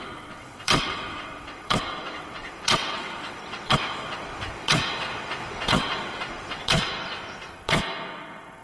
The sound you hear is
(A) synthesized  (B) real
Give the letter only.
A